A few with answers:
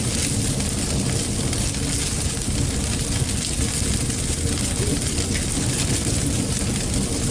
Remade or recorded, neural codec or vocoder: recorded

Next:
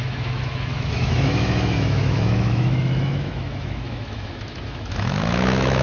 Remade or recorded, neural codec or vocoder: remade, autoencoder, DAC-VAE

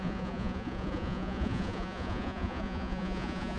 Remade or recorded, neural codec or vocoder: remade, vocoder, Vocos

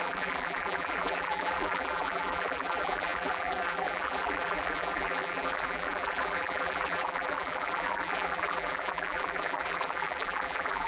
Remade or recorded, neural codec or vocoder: remade, vocoder, BigVGAN v2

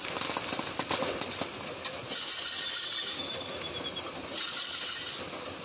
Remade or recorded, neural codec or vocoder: recorded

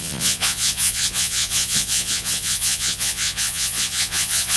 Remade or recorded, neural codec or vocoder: remade, vocoder, Vocos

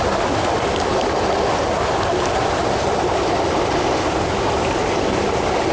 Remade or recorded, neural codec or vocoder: recorded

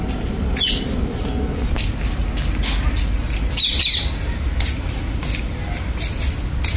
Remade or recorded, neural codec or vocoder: recorded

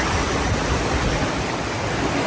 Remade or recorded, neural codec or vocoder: recorded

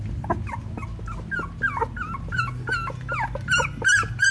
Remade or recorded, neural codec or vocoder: recorded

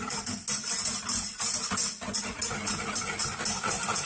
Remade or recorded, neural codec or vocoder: recorded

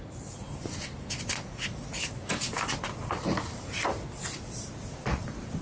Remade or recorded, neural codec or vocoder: recorded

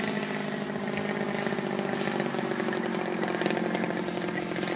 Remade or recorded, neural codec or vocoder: recorded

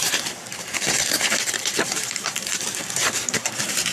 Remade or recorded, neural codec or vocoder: remade, vocoder, BigVGAN v2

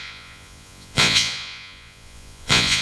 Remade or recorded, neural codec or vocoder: remade, vocoder, Vocos